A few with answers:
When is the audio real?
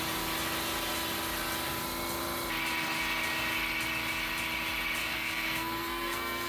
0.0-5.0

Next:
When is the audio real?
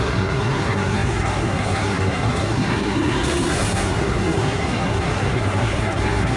none